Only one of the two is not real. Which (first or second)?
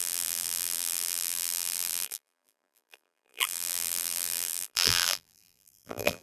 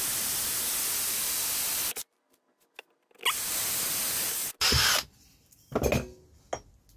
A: first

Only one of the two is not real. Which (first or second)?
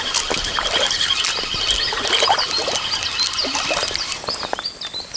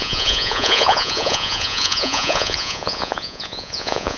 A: second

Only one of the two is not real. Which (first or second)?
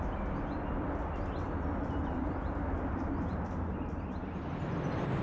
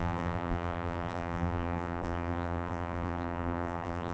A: second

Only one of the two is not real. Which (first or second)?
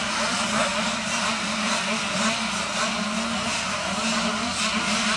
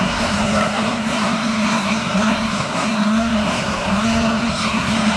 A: second